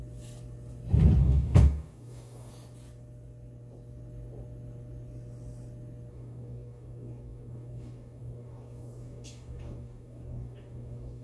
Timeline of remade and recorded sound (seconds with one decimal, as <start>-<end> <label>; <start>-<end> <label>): 0.0-1.2 recorded; 1.2-2.5 remade; 2.5-6.1 recorded; 6.1-11.2 remade